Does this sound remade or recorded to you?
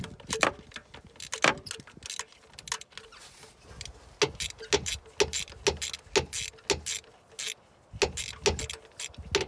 recorded